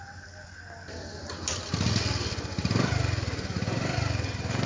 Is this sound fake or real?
real